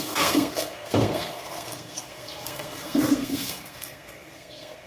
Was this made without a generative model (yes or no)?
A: no